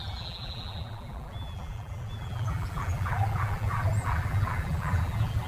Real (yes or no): no